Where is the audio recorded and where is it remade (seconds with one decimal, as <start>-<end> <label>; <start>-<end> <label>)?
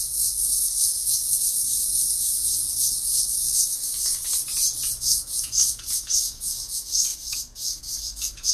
0.0-4.4 remade; 4.4-5.0 recorded; 5.0-8.5 remade